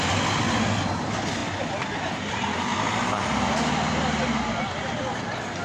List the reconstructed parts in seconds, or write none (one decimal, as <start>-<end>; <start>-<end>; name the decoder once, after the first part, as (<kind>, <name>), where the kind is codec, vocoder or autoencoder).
none